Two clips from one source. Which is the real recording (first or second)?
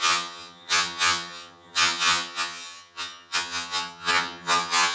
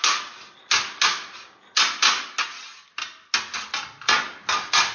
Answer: second